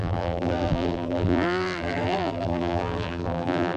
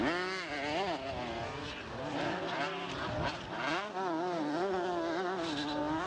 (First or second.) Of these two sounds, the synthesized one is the first